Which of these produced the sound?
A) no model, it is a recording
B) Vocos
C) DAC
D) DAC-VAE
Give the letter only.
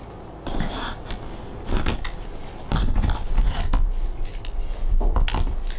A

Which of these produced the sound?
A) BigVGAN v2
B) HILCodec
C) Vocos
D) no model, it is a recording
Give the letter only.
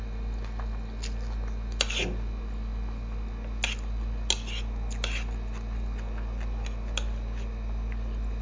D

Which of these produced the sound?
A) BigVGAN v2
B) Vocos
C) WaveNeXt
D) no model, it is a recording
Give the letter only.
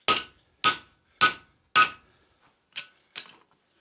D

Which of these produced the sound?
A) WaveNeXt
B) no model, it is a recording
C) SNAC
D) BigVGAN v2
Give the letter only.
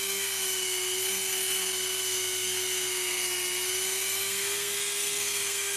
C